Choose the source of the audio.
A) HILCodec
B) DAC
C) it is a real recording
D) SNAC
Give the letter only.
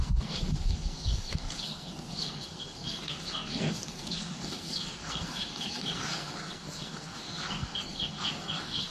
D